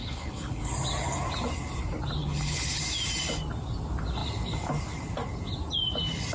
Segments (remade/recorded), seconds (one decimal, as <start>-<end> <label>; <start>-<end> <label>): 0.0-0.7 remade; 0.7-2.2 recorded; 2.2-2.8 remade; 2.8-6.3 recorded